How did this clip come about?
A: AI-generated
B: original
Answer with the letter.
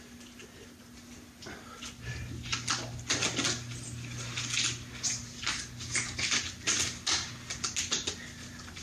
B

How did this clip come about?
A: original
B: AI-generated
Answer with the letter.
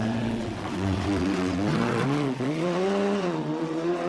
B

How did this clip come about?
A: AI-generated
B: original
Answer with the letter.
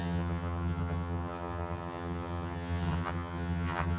A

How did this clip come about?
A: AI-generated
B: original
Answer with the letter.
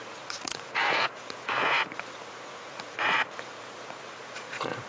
A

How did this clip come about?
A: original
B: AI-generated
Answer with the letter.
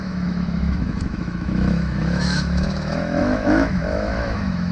B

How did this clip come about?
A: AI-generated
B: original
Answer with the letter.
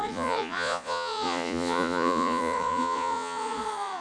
A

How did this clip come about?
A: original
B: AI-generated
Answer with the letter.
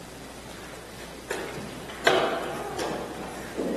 A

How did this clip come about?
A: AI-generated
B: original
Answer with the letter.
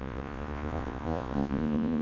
A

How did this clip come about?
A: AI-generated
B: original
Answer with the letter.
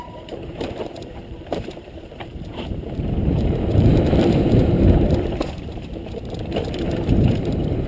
A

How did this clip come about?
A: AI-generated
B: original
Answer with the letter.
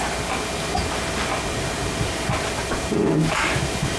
B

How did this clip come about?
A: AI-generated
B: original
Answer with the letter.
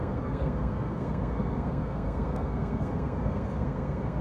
A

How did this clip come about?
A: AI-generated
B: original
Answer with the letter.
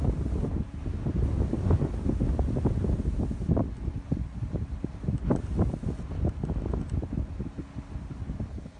B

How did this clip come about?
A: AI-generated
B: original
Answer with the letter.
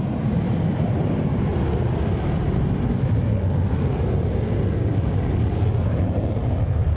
B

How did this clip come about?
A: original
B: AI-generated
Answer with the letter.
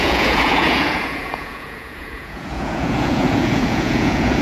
B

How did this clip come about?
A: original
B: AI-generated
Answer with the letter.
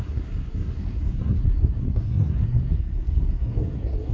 B